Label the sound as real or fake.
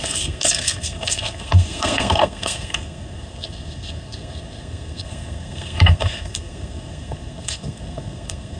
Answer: fake